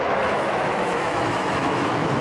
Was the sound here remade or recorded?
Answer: remade